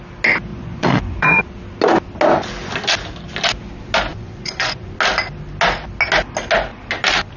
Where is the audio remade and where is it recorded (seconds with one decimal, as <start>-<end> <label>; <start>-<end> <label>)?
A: 0.0-0.5 recorded; 0.5-1.4 remade; 1.4-4.1 recorded; 4.1-4.9 remade; 4.9-7.4 recorded